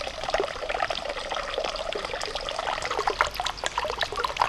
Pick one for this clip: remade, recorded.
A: remade